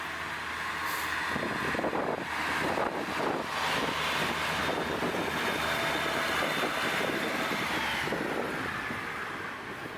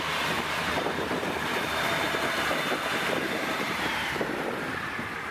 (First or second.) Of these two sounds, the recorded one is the first